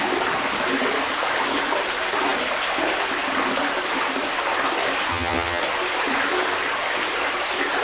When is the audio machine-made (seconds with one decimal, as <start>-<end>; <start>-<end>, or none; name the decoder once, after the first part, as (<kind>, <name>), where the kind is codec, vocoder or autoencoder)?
5.1-5.6 (vocoder, HiFi-GAN)